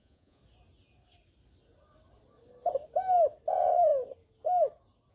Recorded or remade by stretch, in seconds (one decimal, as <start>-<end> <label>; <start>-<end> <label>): 0.0-0.4 remade; 0.4-3.5 recorded; 3.5-3.9 remade; 3.9-5.1 recorded